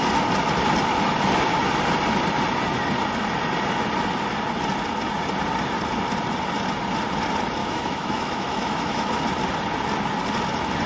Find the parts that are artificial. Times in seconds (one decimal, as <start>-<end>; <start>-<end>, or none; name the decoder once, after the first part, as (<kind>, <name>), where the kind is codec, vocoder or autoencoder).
7.6-9.2 (autoencoder, DAC-VAE)